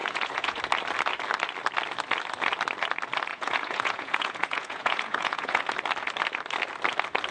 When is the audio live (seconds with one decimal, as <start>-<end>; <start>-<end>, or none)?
0.6-3.3; 5.6-7.3